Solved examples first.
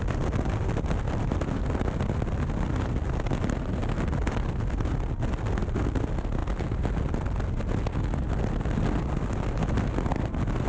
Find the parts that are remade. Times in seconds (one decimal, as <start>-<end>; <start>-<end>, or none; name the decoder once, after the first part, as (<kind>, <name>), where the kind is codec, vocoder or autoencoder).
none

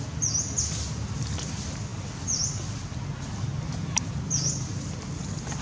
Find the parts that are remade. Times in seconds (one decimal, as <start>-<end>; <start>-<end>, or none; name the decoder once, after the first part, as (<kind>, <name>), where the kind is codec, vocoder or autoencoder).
none

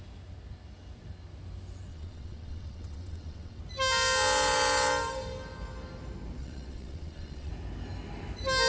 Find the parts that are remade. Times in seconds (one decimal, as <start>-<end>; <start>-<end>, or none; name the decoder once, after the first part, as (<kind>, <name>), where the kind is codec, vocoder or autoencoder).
1.9-3.6 (vocoder, WaveNeXt); 6.4-7.5

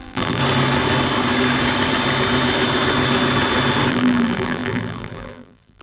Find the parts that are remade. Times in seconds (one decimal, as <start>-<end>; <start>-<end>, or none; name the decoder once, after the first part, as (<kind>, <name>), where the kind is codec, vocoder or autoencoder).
0.0-0.4 (vocoder, BigVGAN v2); 3.9-5.8

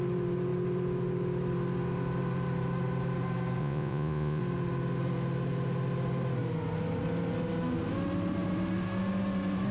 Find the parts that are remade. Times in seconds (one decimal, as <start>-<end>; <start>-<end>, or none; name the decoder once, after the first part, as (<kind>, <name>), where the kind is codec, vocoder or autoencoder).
3.6-4.4 (vocoder, Vocos)